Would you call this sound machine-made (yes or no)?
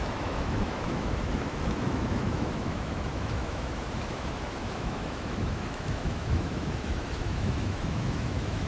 yes